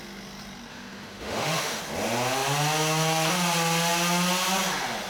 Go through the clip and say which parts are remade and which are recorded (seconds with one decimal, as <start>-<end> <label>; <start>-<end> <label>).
0.0-0.7 recorded; 0.7-1.8 remade; 1.8-5.1 recorded